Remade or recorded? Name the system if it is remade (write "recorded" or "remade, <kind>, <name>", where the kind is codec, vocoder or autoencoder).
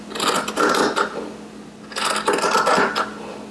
recorded